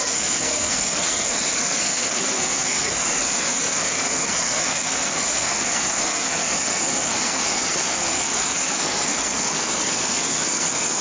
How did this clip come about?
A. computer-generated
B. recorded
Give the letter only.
A